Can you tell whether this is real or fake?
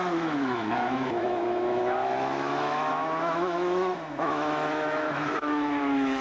fake